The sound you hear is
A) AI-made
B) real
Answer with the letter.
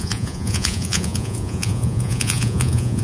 A